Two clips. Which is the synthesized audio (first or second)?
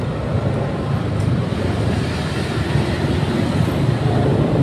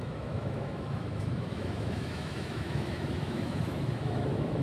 second